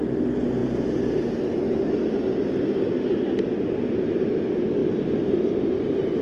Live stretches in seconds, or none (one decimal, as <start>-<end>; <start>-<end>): 0.0-6.2